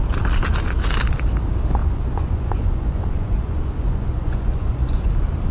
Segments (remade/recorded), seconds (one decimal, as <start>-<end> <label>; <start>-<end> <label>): 0.0-1.8 recorded; 1.8-5.1 remade; 5.1-5.5 recorded